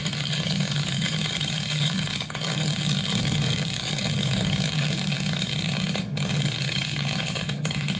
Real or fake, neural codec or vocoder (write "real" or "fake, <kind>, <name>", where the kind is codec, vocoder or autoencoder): fake, codec, DAC